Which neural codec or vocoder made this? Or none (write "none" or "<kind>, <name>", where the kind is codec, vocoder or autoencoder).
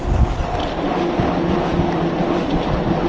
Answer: none